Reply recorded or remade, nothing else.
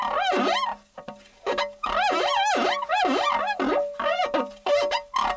recorded